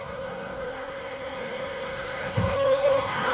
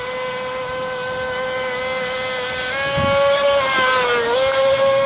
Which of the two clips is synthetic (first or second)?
first